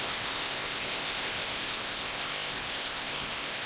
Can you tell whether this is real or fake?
fake